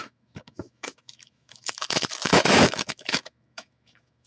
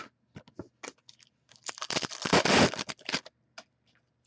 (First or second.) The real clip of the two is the second